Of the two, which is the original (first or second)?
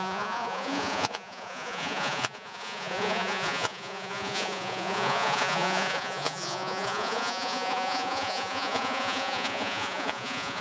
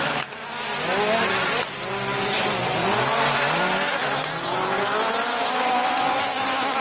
second